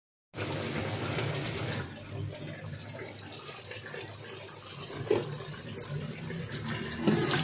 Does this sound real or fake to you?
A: real